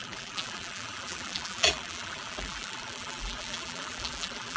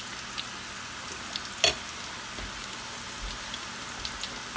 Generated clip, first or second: first